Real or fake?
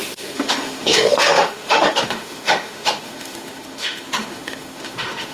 fake